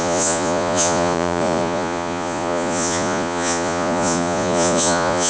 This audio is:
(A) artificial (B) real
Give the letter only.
A